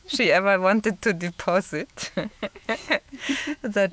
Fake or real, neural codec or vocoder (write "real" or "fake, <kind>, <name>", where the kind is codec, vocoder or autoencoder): fake, autoencoder, DAC-VAE